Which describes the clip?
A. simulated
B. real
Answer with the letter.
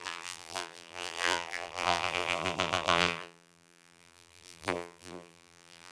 A